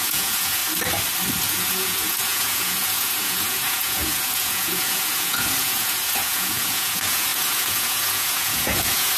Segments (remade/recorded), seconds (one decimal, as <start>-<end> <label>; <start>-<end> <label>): 0.0-0.6 remade; 0.6-1.4 recorded; 1.4-9.2 remade